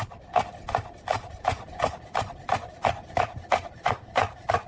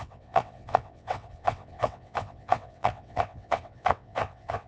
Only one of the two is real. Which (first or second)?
first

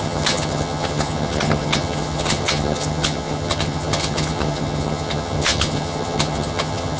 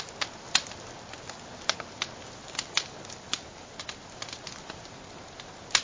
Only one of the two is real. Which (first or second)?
second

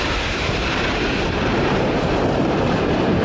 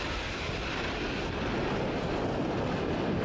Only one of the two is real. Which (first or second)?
second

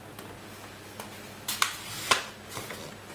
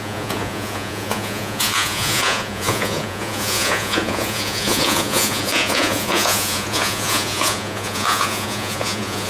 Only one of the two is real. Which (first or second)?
first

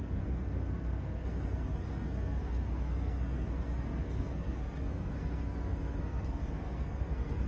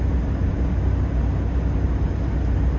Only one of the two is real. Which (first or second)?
second